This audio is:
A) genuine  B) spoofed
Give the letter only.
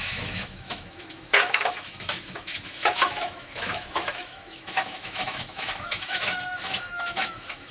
B